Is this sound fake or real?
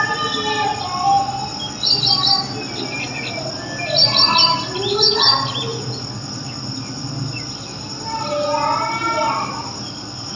real